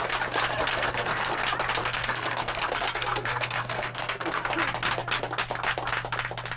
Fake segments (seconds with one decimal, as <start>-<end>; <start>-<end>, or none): 0.7-1.4; 1.8-4.5